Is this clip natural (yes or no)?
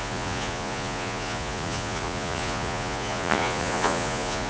no